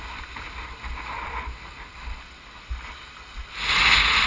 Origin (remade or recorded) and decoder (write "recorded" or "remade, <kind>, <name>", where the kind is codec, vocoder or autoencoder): recorded